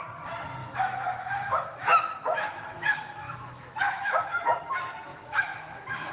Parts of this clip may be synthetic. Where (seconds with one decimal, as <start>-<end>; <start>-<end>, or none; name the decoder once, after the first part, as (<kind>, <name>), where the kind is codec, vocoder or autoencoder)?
0.6-4.3 (autoencoder, DAC-VAE); 5.1-6.1